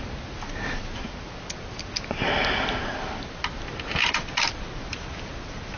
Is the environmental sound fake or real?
real